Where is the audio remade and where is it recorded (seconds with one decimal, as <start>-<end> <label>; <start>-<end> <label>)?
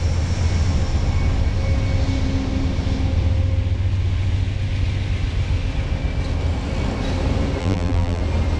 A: 0.0-7.6 recorded; 7.6-8.2 remade; 8.2-8.6 recorded